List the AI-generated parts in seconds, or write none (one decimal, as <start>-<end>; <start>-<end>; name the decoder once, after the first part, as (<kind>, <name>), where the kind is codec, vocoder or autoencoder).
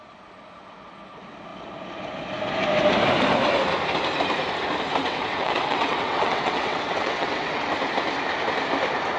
5.0-7.7 (vocoder, WaveNeXt)